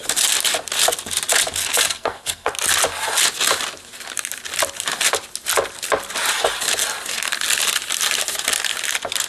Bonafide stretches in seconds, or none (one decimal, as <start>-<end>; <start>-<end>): 0.0-1.6; 2.5-9.3